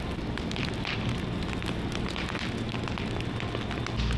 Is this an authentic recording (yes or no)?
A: yes